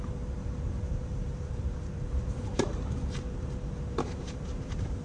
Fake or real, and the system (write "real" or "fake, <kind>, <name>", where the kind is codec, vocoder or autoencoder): fake, vocoder, BigVGAN v2